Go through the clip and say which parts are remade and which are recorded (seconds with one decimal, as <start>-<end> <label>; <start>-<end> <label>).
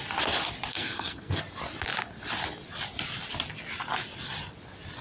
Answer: 0.0-0.7 recorded; 0.7-1.4 remade; 1.4-5.0 recorded